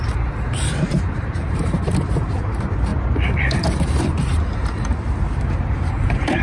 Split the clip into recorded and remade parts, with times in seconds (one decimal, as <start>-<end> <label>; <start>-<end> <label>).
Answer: 0.0-6.4 remade